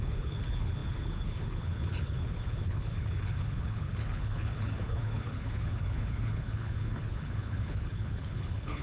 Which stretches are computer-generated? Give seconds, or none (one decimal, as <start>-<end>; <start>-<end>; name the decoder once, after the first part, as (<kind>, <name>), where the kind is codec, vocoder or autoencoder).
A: 0.0-8.8 (codec, HILCodec)